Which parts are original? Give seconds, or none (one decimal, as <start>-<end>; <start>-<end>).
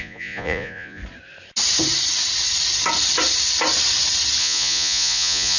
1.0-4.4